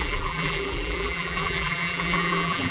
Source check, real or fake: fake